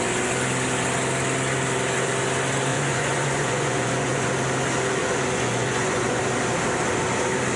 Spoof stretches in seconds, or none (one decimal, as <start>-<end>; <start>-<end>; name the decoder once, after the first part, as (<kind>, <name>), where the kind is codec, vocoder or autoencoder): 2.7-4.3 (vocoder, Vocos); 5.0-6.2